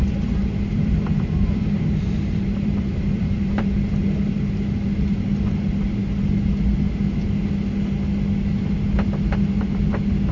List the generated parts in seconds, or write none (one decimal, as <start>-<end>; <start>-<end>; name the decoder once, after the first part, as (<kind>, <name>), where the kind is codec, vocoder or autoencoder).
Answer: 0.7-3.7 (vocoder, BigVGAN v2)